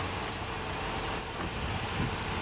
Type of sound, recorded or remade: recorded